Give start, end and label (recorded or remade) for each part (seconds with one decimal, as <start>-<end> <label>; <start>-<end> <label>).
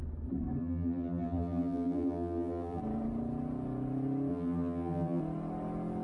0.0-0.6 recorded; 0.6-2.8 remade; 2.8-4.3 recorded; 4.3-5.2 remade; 5.2-6.0 recorded